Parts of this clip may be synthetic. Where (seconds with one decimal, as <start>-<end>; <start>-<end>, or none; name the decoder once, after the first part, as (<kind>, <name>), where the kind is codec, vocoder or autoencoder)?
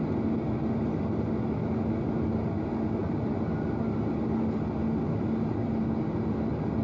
none